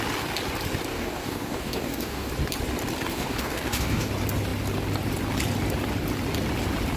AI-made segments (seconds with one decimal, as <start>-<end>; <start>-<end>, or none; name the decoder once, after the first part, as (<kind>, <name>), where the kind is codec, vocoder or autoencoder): 0.9-2.3 (codec, DAC); 3.1-4.1